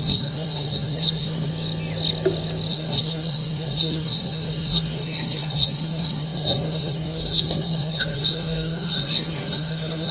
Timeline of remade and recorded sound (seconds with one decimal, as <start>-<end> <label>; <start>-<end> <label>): 0.0-1.5 remade; 1.5-2.7 recorded; 2.7-10.1 remade